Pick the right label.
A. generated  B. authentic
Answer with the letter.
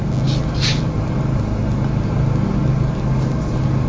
B